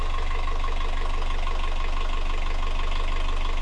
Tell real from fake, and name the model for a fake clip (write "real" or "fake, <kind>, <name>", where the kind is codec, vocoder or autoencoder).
real